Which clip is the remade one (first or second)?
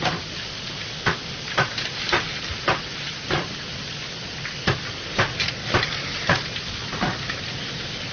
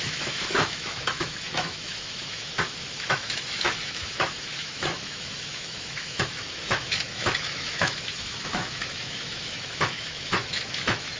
second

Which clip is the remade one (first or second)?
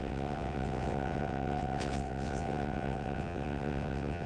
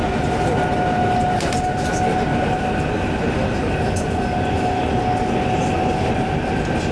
first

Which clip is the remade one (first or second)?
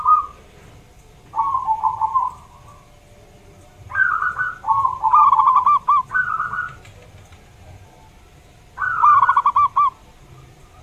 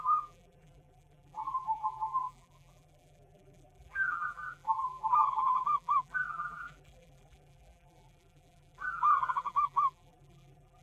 second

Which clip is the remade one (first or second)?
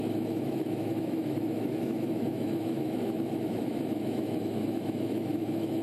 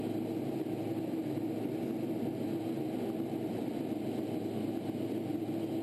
first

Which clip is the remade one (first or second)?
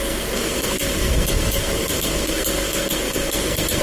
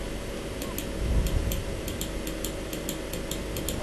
first